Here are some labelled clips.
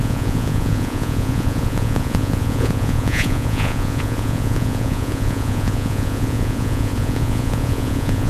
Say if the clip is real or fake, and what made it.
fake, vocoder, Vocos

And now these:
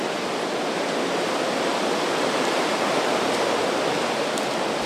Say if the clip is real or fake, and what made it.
fake, vocoder, BigVGAN v2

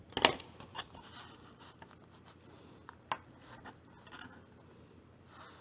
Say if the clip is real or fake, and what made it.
real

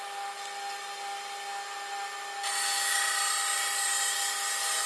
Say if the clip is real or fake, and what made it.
real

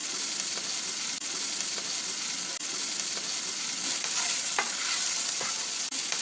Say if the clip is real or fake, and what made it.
real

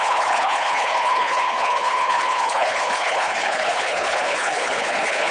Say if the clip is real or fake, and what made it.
fake, codec, HILCodec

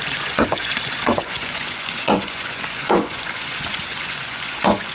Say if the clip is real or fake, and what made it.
fake, vocoder, Vocos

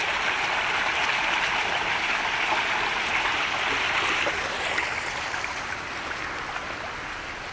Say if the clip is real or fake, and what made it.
real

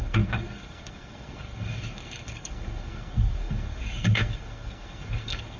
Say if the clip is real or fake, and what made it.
fake, codec, SNAC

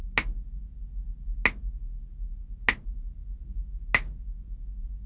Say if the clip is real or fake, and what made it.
real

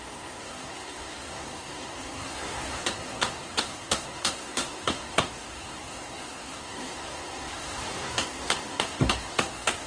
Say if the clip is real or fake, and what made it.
fake, codec, SNAC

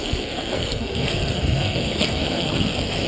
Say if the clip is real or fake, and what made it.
fake, codec, SNAC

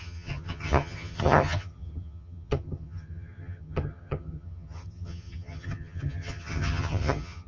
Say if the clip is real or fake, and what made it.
fake, vocoder, HiFi-GAN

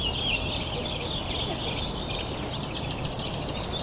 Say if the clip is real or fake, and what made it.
real